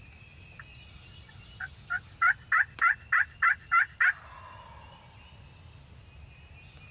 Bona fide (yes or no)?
yes